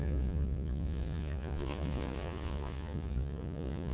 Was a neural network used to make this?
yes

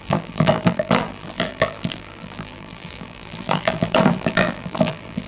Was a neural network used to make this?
yes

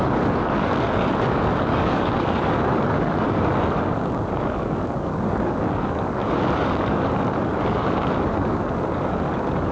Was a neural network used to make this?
yes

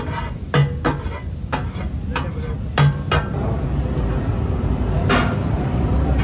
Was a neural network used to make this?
no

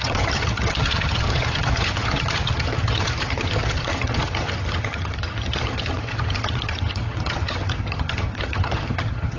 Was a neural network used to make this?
yes